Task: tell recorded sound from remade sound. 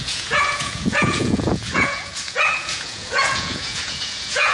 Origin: remade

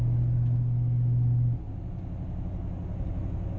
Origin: recorded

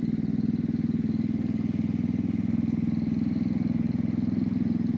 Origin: recorded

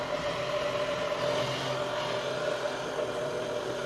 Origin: recorded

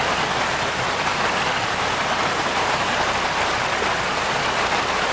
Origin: recorded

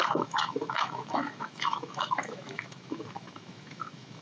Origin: remade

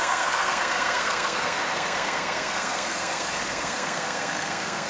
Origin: remade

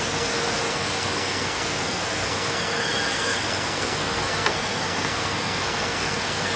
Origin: remade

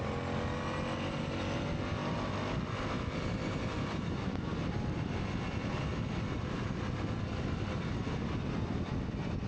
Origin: recorded